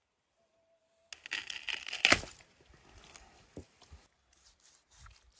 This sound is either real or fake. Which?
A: real